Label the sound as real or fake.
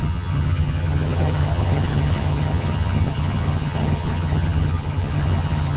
fake